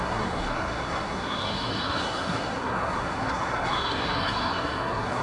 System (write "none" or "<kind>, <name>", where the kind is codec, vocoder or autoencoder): codec, SNAC